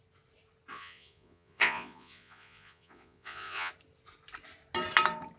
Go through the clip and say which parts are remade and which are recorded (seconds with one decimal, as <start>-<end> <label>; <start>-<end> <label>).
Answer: 0.0-0.7 recorded; 0.7-3.7 remade; 3.7-5.4 recorded